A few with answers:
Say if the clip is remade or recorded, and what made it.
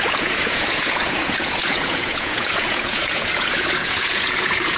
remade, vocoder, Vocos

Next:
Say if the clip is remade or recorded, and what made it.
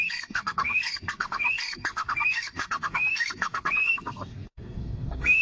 remade, codec, SNAC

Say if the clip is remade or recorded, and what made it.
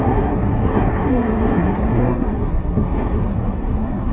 remade, codec, SNAC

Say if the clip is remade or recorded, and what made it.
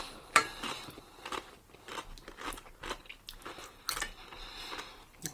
recorded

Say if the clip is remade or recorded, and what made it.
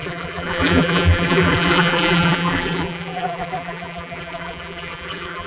remade, vocoder, BigVGAN v2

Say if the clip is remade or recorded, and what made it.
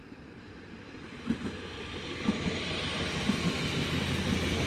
recorded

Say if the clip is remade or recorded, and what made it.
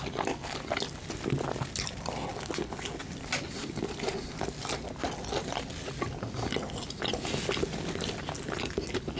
recorded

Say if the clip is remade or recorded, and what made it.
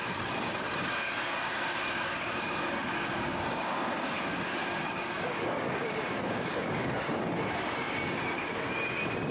remade, codec, DAC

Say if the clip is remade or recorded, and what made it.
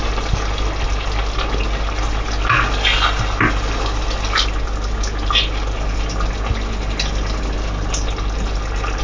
recorded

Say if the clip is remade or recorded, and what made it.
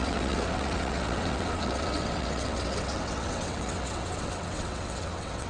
remade, vocoder, WaveNeXt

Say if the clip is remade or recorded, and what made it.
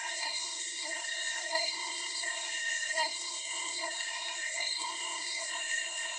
remade, codec, SNAC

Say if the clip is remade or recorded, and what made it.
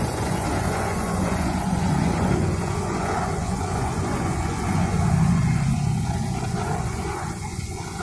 remade, vocoder, Vocos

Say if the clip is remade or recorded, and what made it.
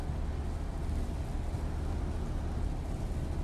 recorded